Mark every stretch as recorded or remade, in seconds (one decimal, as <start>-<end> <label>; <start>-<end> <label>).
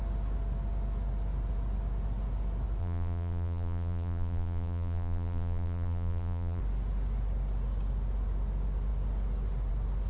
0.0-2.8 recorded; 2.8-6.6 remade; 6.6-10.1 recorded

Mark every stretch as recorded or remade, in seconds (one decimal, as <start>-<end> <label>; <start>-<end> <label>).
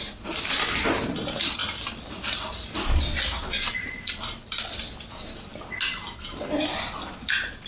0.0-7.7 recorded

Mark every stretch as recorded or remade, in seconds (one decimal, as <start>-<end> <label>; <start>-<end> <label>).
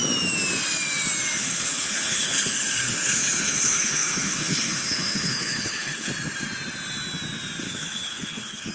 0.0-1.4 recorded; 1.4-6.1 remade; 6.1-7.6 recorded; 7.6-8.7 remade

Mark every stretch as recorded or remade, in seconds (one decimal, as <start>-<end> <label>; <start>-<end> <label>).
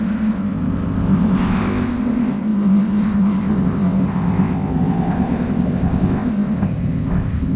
0.0-7.6 remade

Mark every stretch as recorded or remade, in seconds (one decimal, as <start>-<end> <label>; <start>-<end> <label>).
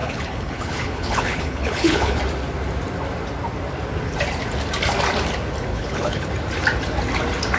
0.0-2.2 remade; 2.2-5.7 recorded; 5.7-6.3 remade; 6.3-7.6 recorded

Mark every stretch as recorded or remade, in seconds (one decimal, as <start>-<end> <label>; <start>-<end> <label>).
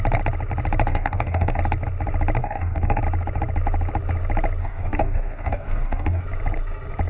0.0-0.9 recorded; 0.9-1.6 remade; 1.6-2.4 recorded; 2.4-3.0 remade; 3.0-4.6 recorded; 4.6-6.2 remade; 6.2-7.1 recorded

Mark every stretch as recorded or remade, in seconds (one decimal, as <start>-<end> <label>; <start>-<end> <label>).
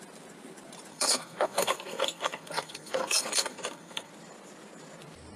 0.0-0.9 recorded; 0.9-4.1 remade; 4.1-5.4 recorded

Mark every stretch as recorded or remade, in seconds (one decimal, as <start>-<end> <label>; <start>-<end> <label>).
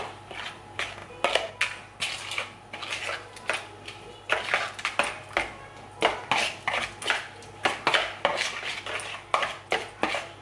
0.0-10.4 recorded